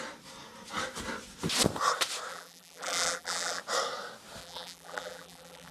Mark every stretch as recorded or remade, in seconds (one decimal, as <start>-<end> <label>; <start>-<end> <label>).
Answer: 0.0-2.3 recorded; 2.3-3.6 remade; 3.6-4.4 recorded; 4.4-5.7 remade